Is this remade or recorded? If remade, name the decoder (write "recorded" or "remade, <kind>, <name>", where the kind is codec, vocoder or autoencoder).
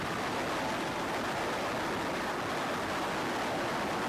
recorded